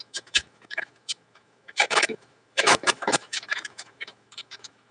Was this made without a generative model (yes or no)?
no